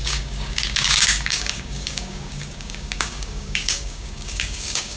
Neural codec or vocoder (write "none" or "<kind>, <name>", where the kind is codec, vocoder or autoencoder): codec, DAC